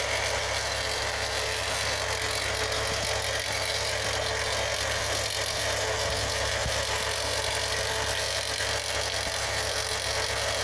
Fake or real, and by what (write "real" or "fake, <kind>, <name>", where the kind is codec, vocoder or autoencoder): real